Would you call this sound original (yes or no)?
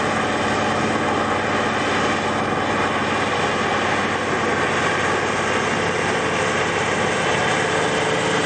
yes